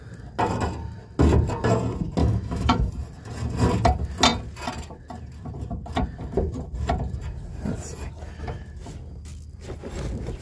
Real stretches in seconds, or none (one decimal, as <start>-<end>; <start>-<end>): 0.0-2.2; 2.9-10.4